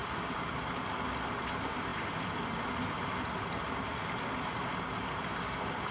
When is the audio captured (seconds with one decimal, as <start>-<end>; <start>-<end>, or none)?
0.6-5.9